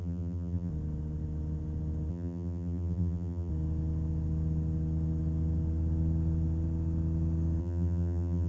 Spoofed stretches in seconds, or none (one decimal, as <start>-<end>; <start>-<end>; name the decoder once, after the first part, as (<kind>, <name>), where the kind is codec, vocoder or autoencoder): 0.0-0.7 (vocoder, BigVGAN v2); 2.1-3.5; 7.6-8.5